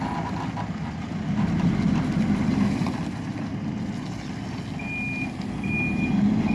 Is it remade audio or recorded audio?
recorded